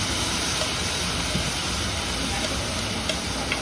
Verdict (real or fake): real